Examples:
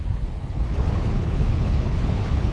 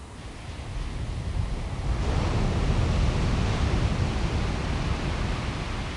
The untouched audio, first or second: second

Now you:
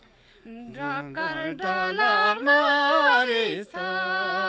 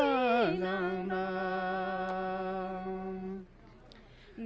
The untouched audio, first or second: second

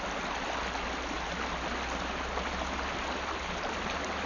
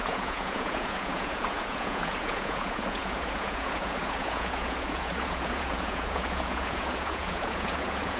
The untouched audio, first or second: first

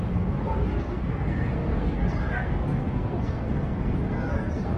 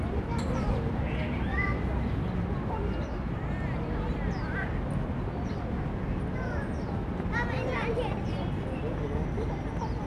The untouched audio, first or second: second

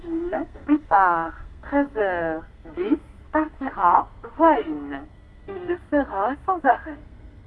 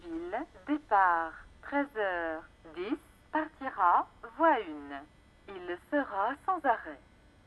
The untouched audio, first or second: second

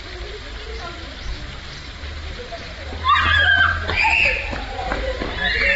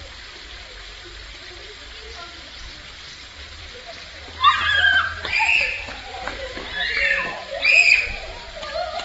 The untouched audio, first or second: first